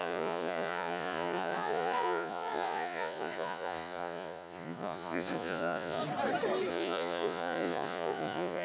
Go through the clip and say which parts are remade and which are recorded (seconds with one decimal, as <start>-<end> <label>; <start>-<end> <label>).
0.0-6.0 remade; 6.0-6.7 recorded; 6.7-8.6 remade

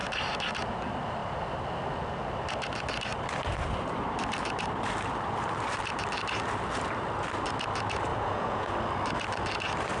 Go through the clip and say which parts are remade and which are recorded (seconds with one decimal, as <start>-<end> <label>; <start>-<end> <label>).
0.0-8.1 recorded; 8.1-8.7 remade; 8.7-10.0 recorded

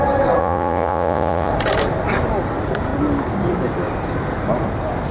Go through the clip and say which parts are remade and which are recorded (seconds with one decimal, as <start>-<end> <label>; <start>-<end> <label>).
0.0-0.4 recorded; 0.4-1.5 remade; 1.5-5.1 recorded

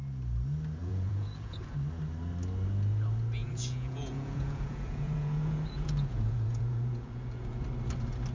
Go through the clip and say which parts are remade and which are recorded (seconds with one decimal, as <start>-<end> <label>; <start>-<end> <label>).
0.0-0.8 recorded; 0.8-1.6 remade; 1.6-3.4 recorded; 3.4-7.6 remade; 7.6-8.3 recorded

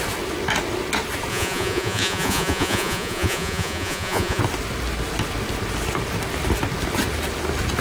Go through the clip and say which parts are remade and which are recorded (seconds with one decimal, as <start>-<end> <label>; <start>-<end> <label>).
0.0-1.3 recorded; 1.3-4.4 remade; 4.4-7.8 recorded